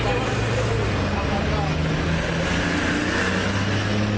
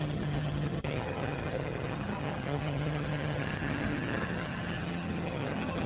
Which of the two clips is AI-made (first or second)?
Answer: second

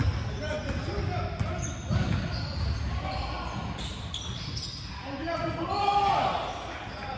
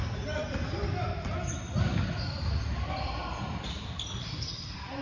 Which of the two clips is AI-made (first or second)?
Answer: second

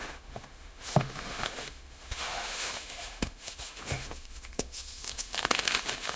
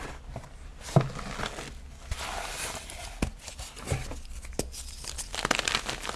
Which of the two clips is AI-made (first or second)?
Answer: first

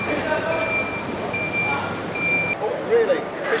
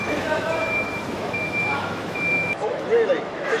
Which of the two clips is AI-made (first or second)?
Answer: second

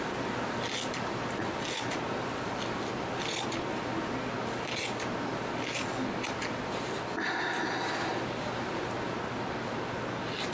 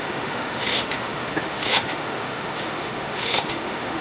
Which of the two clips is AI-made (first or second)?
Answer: second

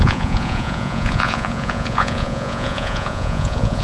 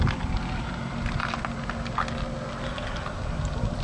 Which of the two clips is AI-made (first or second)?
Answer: first